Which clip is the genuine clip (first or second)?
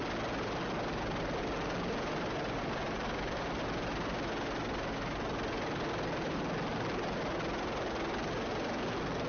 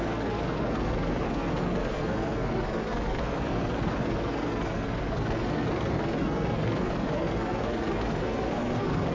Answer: first